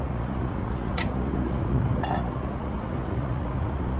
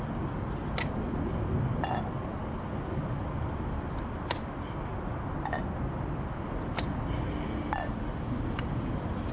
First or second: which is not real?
first